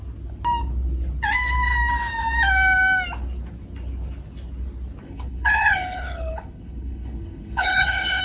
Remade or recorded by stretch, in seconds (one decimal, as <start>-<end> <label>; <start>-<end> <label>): 0.0-5.0 recorded; 5.0-8.2 remade